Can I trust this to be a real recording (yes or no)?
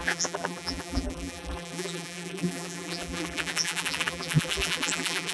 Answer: no